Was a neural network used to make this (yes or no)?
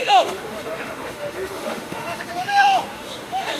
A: yes